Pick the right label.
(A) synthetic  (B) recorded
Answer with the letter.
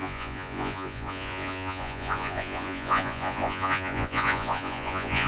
A